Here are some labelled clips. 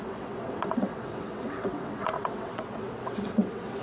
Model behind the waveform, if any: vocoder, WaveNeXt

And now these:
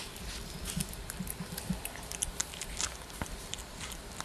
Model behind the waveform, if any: none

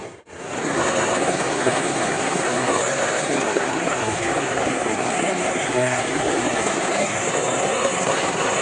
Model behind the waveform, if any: codec, SNAC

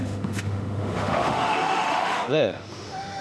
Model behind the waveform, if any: autoencoder, DAC-VAE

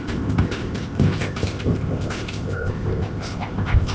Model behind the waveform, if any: codec, ZipCodec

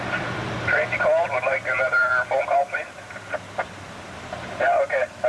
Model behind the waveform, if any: vocoder, BigVGAN v2